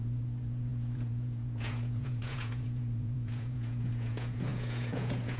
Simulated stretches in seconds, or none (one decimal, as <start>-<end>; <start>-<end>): 0.0-5.4